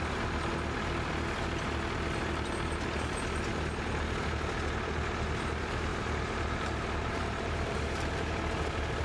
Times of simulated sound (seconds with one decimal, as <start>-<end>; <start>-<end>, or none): 5.9-8.1